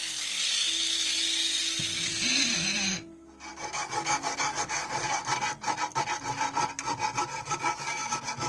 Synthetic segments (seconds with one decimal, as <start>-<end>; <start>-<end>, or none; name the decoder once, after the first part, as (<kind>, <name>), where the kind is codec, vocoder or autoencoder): 3.5-5.2 (codec, DAC); 7.3-8.5